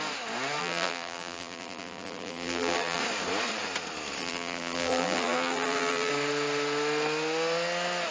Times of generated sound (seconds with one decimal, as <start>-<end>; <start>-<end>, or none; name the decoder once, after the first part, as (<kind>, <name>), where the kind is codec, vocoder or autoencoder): 0.6-3.0 (vocoder, BigVGAN v2); 4.2-6.1